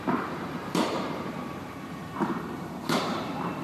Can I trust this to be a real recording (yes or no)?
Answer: no